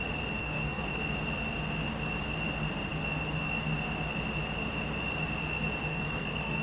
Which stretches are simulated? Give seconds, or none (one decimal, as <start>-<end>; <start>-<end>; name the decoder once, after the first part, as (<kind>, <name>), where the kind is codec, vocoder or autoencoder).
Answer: 0.4-1.0 (codec, SNAC); 5.9-6.6